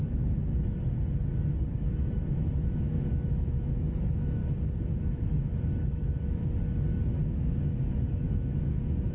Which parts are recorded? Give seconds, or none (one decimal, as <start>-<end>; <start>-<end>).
0.4-1.7; 4.4-5.0; 6.4-7.3